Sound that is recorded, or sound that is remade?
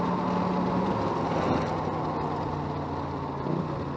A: recorded